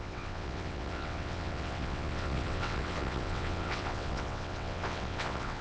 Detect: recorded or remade remade